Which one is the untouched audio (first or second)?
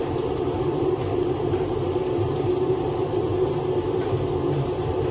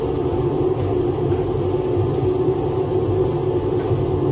second